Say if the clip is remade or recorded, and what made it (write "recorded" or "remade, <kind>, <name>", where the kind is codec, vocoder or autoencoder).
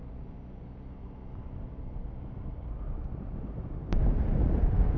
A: recorded